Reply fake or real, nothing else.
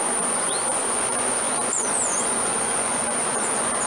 fake